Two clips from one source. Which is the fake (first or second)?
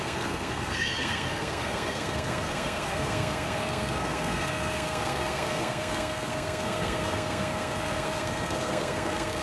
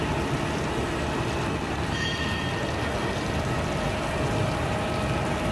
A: first